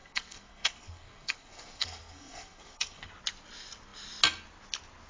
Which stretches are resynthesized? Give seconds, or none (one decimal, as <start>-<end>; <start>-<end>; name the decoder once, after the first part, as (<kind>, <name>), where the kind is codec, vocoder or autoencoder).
0.0-3.1 (codec, SNAC)